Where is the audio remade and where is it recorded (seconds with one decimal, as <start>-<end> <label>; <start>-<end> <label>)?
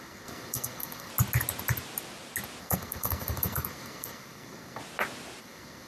0.0-1.1 remade; 1.1-2.6 recorded; 2.6-4.8 remade; 4.8-5.4 recorded; 5.4-5.9 remade